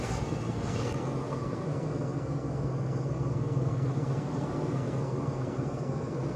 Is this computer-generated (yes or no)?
yes